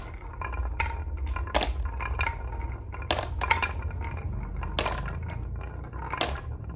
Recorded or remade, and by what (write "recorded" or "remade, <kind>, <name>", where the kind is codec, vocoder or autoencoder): recorded